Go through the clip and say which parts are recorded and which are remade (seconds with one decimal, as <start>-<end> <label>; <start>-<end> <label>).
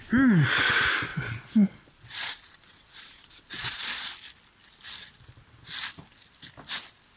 0.0-1.1 recorded; 1.1-4.1 remade; 4.1-7.2 recorded